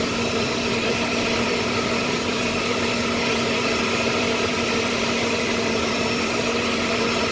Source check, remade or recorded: remade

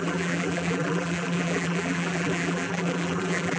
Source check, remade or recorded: remade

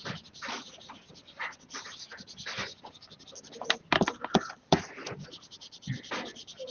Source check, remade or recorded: recorded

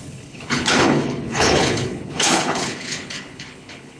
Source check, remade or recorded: remade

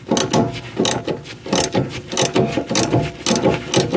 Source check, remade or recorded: recorded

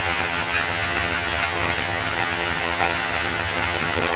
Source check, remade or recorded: remade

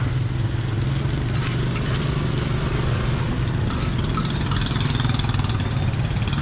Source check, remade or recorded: recorded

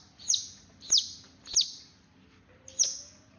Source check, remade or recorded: recorded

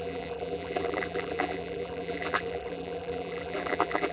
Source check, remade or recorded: remade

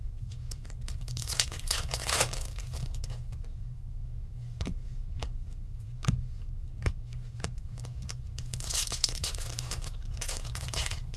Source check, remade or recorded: remade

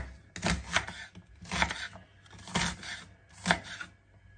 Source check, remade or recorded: recorded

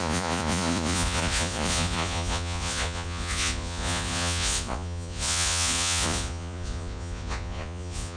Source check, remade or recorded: remade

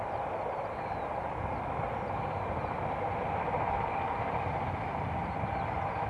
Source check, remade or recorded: recorded